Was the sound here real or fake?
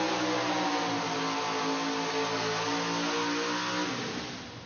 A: real